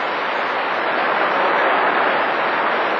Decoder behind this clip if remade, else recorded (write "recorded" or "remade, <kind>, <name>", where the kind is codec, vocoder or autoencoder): recorded